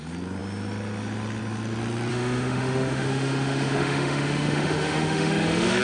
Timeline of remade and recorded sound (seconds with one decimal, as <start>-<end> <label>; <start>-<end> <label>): 0.0-2.1 recorded; 2.1-5.8 remade